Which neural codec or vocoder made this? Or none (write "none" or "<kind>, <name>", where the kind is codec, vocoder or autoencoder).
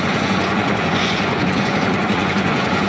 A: vocoder, Vocos